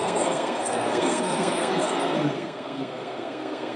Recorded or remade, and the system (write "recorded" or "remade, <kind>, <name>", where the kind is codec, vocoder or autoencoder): remade, codec, SNAC